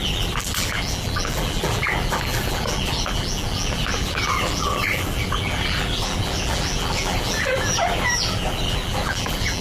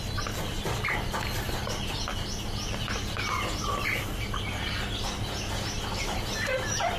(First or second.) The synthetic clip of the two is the first